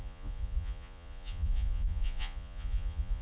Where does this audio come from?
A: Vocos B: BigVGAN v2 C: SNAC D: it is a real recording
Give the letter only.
A